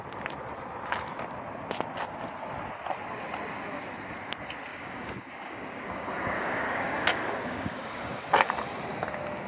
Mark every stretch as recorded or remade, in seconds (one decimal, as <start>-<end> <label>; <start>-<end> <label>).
0.0-4.7 recorded; 4.7-8.3 remade; 8.3-9.5 recorded